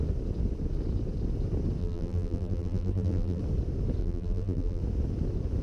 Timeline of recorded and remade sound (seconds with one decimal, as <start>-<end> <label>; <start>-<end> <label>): 0.0-1.8 recorded; 1.8-3.4 remade; 3.4-4.0 recorded; 4.0-4.8 remade; 4.8-5.6 recorded

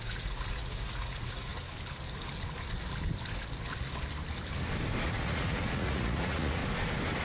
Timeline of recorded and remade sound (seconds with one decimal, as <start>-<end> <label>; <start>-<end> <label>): 0.0-1.5 remade; 1.5-5.0 recorded; 5.0-6.6 remade; 6.6-7.2 recorded

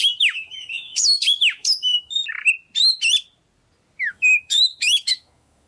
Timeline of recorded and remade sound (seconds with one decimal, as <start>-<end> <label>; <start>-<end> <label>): 0.0-2.2 remade; 2.2-4.1 recorded; 4.1-5.7 remade

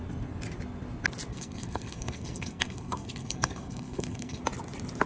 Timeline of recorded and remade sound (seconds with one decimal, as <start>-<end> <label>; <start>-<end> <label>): 0.0-1.3 recorded; 1.3-4.4 remade; 4.4-5.1 recorded

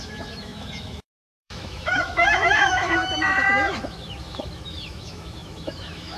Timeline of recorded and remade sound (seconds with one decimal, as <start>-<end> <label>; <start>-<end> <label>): 0.0-6.2 remade